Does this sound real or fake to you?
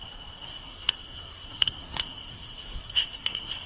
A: fake